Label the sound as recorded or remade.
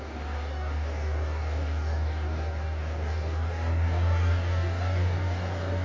remade